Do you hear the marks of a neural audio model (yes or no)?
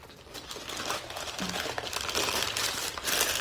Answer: no